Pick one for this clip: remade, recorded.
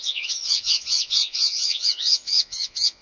remade